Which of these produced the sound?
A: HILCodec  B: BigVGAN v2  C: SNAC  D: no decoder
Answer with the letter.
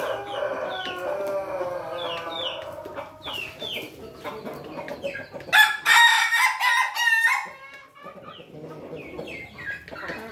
D